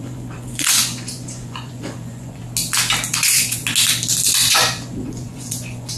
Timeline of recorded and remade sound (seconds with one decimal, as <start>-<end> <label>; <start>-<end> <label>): 0.0-2.4 remade; 2.4-3.1 recorded; 3.1-3.6 remade; 3.6-4.5 recorded; 4.5-6.0 remade